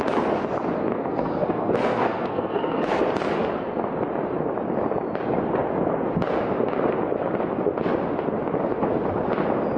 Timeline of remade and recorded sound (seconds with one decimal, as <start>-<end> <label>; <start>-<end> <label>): 0.0-0.9 recorded; 0.9-3.0 remade; 3.0-9.8 recorded